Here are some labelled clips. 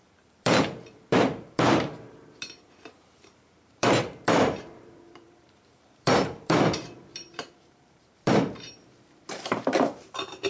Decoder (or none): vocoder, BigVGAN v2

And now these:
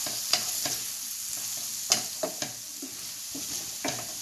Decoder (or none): none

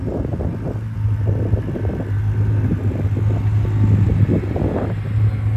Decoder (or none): none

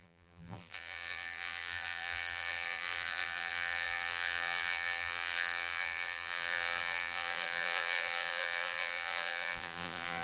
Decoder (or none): vocoder, BigVGAN v2